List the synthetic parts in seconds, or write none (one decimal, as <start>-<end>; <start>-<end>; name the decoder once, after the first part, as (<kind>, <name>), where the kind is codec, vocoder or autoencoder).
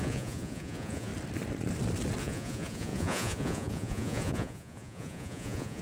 0.0-1.1 (vocoder, Vocos); 2.2-5.8